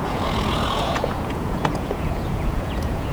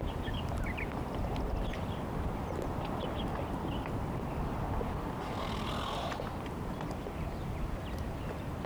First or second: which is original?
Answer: second